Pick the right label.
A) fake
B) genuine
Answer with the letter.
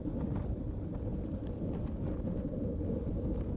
B